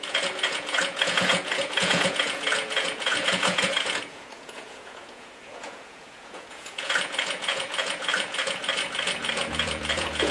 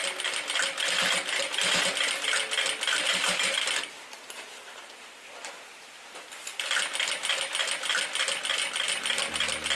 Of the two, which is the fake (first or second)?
first